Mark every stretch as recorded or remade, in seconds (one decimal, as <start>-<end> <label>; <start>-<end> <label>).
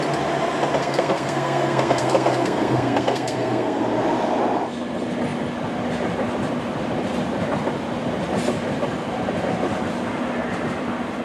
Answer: 0.0-0.8 recorded; 0.8-3.8 remade; 3.8-11.2 recorded